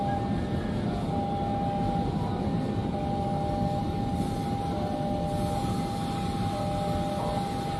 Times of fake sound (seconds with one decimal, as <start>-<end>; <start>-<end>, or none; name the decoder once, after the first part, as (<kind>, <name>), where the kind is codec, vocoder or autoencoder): none